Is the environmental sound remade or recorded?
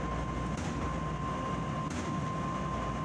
recorded